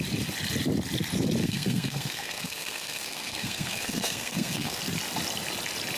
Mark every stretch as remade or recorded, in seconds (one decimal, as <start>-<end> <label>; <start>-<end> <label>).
0.0-1.4 recorded; 1.4-4.8 remade; 4.8-6.0 recorded